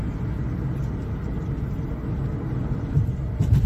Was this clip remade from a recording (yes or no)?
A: no